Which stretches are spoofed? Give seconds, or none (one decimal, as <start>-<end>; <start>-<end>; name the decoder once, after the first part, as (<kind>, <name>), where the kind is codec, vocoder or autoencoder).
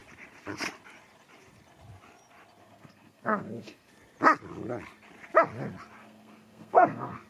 2.6-3.9 (codec, SNAC); 6.0-7.3